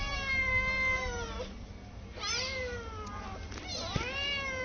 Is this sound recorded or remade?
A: recorded